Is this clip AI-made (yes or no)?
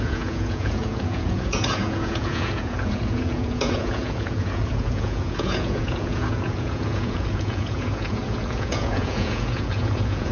yes